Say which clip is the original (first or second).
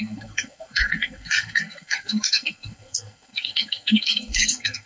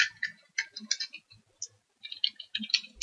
second